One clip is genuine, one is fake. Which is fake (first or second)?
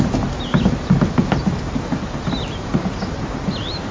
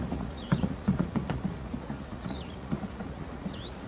second